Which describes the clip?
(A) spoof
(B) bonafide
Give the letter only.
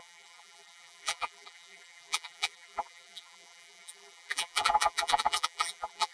A